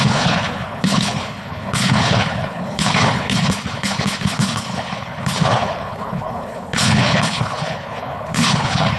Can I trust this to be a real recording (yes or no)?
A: no